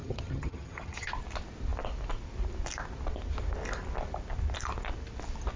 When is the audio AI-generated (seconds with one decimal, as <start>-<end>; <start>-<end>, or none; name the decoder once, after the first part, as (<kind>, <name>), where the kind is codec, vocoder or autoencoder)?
0.0-1.1 (vocoder, HiFi-GAN)